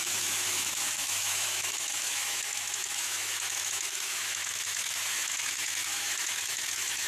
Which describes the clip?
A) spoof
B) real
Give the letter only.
A